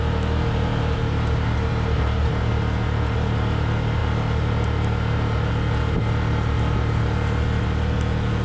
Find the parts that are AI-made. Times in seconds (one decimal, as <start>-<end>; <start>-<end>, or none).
none